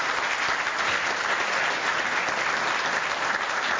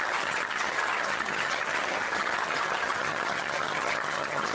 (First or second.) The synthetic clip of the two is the second